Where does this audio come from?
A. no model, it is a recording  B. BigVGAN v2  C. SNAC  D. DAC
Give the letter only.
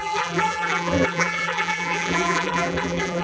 B